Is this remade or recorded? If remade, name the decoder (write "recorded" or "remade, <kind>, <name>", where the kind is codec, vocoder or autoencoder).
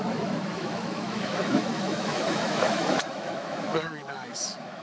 remade, autoencoder, DAC-VAE